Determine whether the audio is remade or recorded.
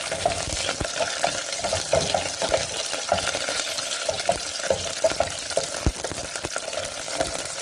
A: recorded